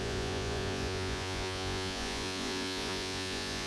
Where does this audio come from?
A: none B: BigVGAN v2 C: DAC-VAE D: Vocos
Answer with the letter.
D